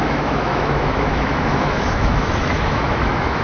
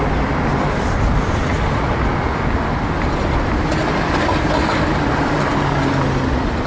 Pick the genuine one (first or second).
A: second